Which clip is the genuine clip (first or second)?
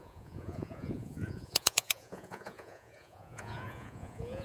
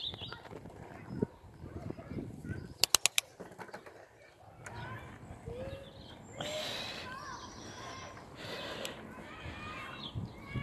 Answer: second